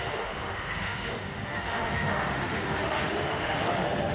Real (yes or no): no